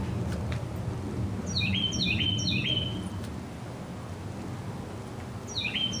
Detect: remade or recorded recorded